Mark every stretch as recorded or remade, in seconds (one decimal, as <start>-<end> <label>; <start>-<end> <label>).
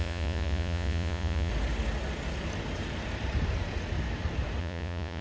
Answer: 0.0-1.5 remade; 1.5-4.6 recorded; 4.6-5.2 remade